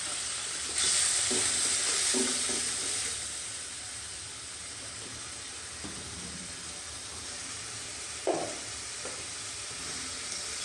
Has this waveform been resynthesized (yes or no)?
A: no